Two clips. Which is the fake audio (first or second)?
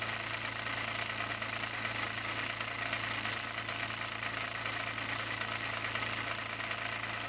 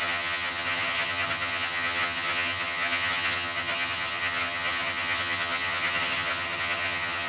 second